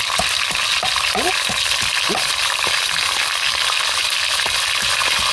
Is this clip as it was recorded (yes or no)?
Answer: yes